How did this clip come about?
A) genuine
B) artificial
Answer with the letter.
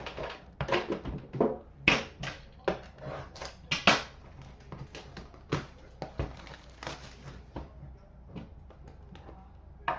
A